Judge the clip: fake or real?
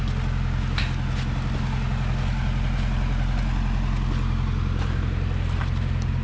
real